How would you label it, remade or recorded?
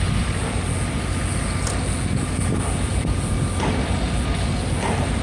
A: recorded